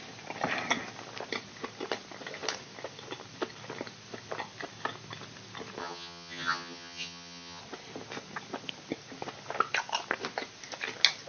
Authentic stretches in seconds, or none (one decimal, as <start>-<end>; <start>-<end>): 0.0-5.8; 7.6-11.3